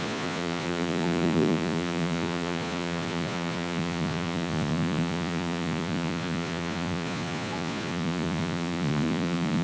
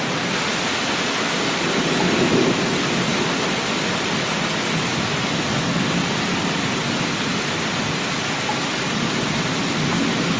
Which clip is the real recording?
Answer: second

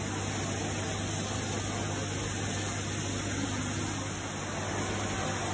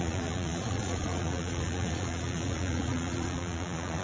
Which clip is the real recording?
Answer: first